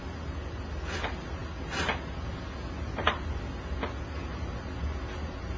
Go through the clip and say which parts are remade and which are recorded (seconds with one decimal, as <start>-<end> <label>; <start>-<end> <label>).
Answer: 0.0-5.6 recorded